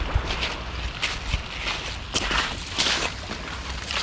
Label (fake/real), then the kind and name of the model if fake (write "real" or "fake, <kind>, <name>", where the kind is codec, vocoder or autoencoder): real